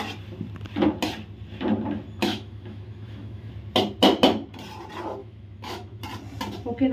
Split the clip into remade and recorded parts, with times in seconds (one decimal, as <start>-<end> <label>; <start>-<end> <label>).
0.0-2.2 recorded; 2.2-3.5 remade; 3.5-5.2 recorded; 5.2-6.0 remade; 6.0-6.9 recorded